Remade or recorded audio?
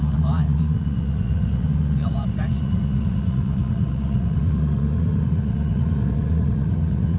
remade